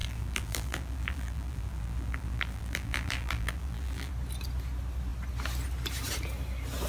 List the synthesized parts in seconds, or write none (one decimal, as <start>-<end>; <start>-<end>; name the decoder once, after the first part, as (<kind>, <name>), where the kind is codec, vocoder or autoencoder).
0.0-4.1 (vocoder, BigVGAN v2)